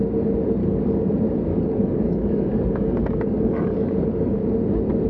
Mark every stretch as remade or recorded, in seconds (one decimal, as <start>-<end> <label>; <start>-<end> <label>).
0.0-0.6 recorded; 0.6-1.1 remade; 1.1-1.5 recorded; 1.5-4.4 remade; 4.4-5.1 recorded